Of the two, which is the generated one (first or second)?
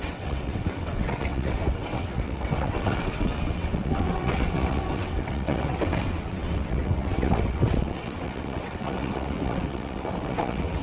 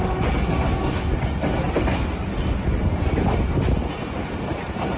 first